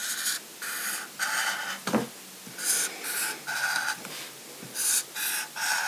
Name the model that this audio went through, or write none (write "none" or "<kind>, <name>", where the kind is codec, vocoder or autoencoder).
none